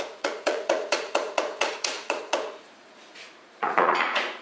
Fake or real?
fake